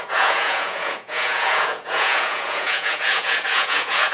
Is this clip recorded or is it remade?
remade